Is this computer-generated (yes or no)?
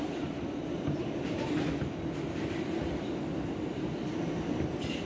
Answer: no